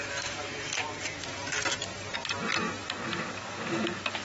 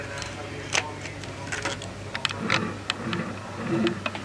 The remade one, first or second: first